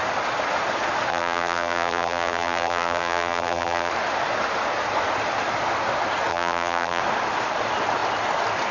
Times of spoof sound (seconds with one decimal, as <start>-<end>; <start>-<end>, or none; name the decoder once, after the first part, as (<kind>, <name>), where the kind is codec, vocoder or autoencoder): 1.1-3.9 (vocoder, BigVGAN v2); 6.3-7.0